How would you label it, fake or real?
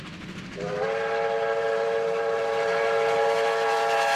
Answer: real